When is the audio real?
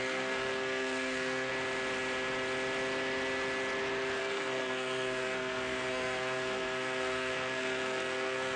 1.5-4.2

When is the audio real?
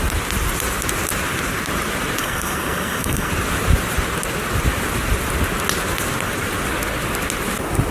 0.0-2.2; 3.3-7.9